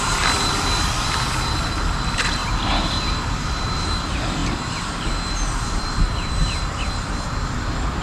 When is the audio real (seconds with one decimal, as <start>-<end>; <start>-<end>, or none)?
2.4-3.3